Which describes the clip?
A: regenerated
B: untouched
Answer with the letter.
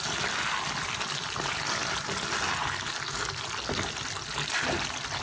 B